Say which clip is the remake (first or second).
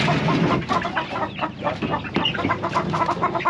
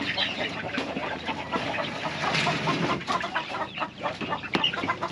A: second